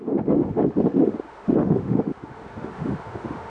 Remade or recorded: remade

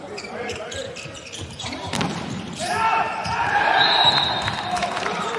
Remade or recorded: remade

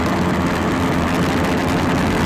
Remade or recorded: recorded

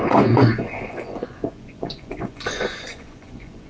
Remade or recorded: remade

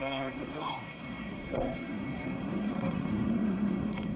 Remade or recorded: remade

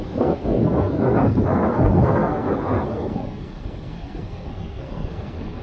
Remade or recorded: remade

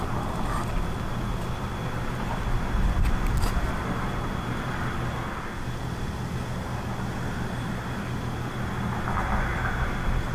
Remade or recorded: recorded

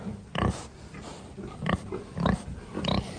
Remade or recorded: recorded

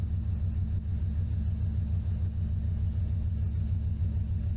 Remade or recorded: recorded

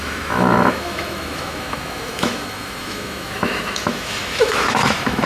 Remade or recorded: remade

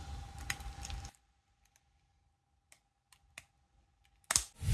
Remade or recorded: recorded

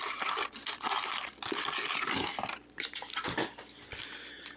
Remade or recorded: recorded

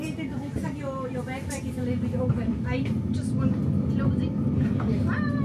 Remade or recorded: recorded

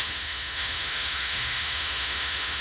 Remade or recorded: remade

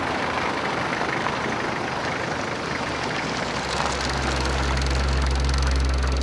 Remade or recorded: recorded